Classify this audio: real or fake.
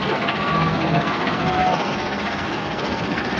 fake